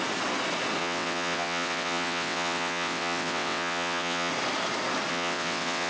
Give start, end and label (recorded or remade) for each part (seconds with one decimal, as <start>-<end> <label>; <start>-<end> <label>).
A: 0.0-0.8 recorded; 0.8-4.3 remade; 4.3-5.1 recorded; 5.1-5.9 remade